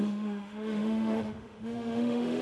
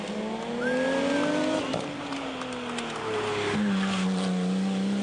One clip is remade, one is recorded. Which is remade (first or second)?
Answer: first